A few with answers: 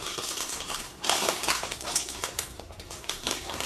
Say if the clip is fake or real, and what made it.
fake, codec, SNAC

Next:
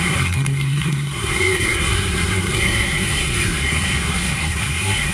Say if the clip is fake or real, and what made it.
fake, codec, SNAC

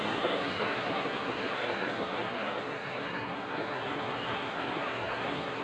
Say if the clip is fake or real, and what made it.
fake, codec, SNAC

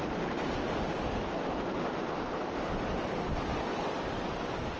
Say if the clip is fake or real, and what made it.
real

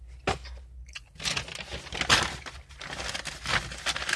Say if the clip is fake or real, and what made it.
real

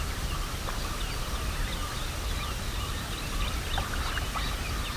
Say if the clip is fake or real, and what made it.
real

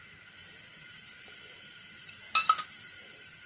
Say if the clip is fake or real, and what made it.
real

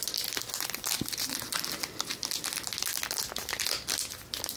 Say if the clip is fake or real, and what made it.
real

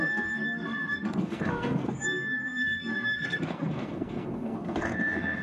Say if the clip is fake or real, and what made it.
fake, codec, SNAC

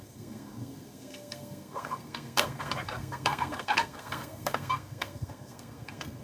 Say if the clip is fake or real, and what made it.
fake, codec, SNAC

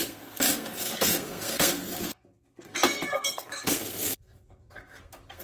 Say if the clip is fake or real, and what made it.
fake, codec, SNAC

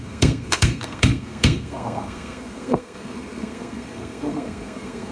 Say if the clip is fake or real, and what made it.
fake, codec, SNAC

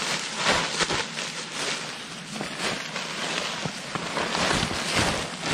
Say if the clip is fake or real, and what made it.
real